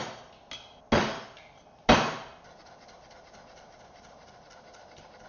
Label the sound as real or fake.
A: real